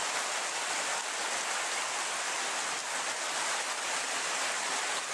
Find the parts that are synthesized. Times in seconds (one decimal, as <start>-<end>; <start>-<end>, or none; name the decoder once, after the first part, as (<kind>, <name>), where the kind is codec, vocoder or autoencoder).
none